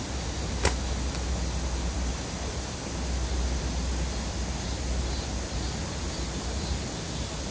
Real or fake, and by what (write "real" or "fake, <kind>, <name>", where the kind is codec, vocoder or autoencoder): real